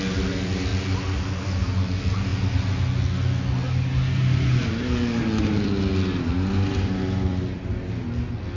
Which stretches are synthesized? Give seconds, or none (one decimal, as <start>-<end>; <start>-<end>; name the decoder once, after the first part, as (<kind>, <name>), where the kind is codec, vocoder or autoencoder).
none